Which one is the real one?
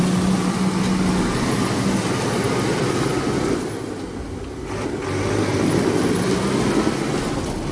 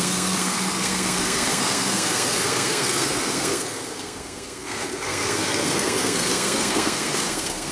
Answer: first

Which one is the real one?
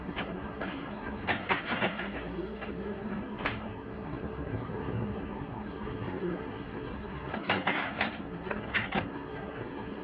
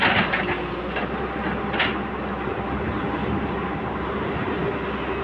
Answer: second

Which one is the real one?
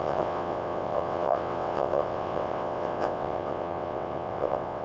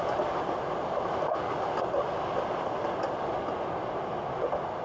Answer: second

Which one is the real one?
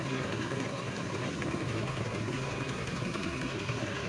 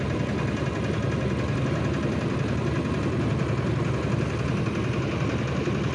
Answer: second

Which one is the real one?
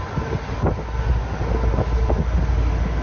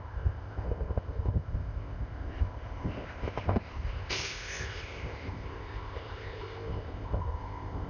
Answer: first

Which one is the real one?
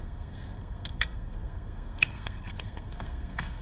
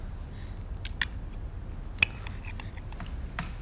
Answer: second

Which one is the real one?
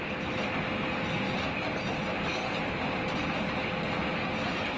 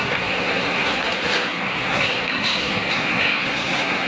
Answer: first